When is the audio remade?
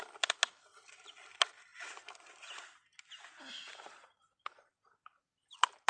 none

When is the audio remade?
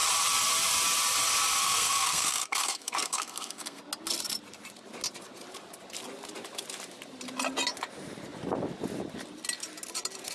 1.6-3.8 (codec, SNAC)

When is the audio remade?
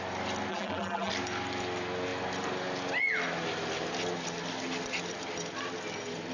0.5-1.1 (vocoder, BigVGAN v2)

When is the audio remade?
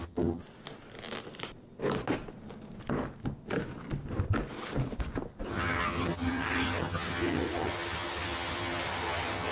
0.0-0.4 (vocoder, HiFi-GAN); 5.5-9.5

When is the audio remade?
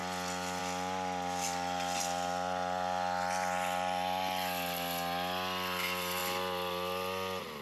none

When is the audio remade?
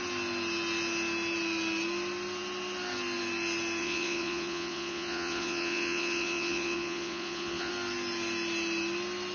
3.8-7.7 (vocoder, Vocos)